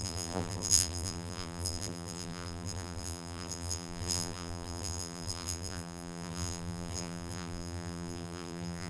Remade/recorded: remade